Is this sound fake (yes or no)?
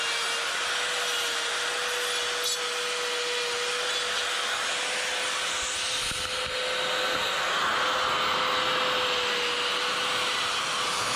no